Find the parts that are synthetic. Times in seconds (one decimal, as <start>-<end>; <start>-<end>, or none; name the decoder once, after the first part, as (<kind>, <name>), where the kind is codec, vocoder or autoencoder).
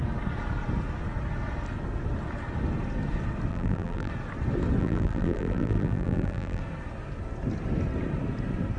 3.5-4.1 (vocoder, BigVGAN v2); 4.8-6.6